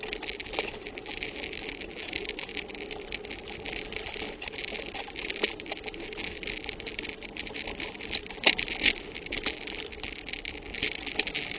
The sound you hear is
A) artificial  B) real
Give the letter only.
B